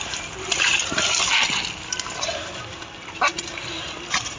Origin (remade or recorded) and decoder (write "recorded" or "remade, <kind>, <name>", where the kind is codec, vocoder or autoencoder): recorded